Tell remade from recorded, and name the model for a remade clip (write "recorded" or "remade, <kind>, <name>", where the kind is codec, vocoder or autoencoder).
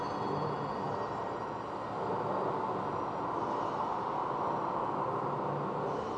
recorded